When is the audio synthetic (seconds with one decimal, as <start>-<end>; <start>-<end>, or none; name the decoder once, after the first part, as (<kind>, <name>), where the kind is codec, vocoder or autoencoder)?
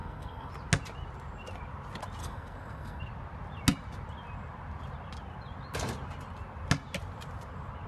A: 0.0-0.5 (codec, SNAC); 2.2-3.0